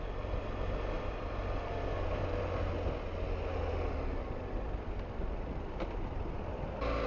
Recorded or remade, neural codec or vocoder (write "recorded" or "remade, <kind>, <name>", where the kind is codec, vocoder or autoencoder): recorded